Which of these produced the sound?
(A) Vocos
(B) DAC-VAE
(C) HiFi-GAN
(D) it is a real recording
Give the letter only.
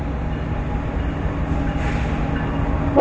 D